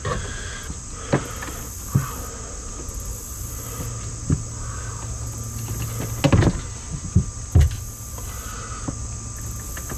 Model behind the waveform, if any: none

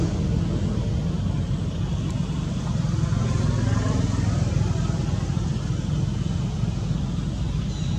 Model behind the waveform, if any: none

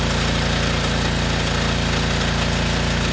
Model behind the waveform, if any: none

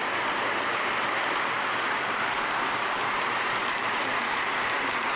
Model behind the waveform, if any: vocoder, BigVGAN v2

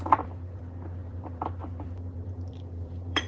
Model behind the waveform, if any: vocoder, BigVGAN v2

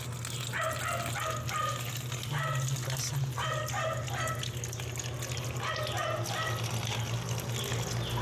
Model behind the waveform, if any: none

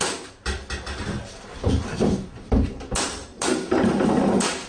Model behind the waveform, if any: vocoder, BigVGAN v2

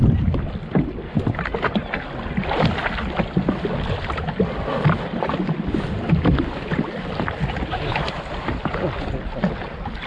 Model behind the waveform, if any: none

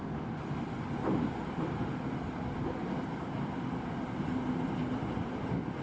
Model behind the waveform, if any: vocoder, BigVGAN v2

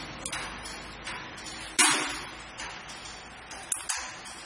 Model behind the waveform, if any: none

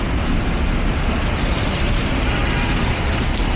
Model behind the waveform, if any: none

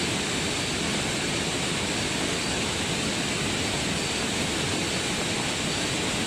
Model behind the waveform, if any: none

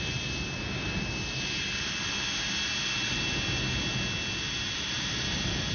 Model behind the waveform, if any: none